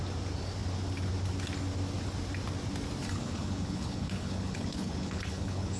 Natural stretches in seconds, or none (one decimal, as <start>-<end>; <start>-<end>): 0.0-3.0